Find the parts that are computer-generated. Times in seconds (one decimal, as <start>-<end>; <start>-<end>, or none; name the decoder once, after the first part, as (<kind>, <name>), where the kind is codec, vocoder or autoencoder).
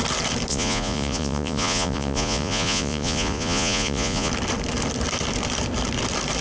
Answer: 0.5-4.3 (vocoder, Vocos)